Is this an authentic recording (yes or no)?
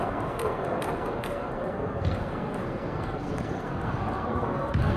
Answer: no